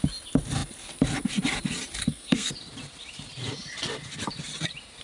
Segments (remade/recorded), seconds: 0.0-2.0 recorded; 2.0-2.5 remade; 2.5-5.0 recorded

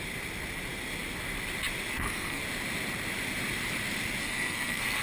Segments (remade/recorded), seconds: 0.0-1.9 recorded; 1.9-2.4 remade; 2.4-4.2 recorded; 4.2-5.0 remade

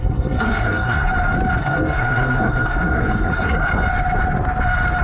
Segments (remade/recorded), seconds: 0.0-1.1 remade; 1.1-1.6 recorded; 1.6-3.7 remade; 3.7-5.0 recorded